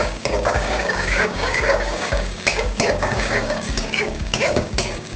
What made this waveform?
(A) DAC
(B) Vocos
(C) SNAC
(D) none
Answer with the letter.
A